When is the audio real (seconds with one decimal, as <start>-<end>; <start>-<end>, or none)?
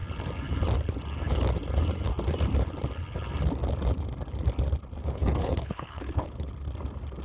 0.0-5.0; 6.5-7.2